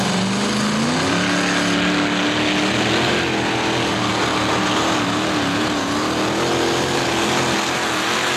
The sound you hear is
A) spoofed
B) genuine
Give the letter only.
B